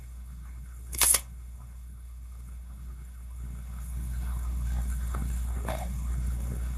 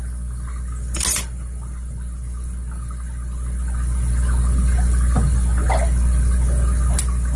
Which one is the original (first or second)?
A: second